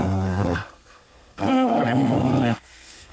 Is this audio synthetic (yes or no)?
yes